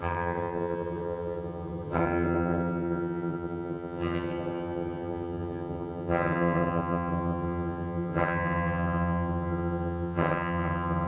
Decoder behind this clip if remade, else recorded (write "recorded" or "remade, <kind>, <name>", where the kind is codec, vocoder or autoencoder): remade, vocoder, HiFi-GAN